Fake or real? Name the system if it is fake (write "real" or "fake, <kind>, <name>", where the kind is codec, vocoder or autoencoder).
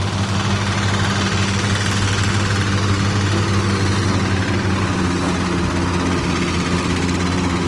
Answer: real